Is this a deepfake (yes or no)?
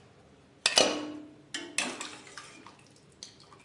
no